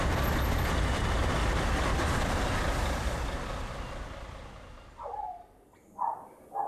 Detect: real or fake real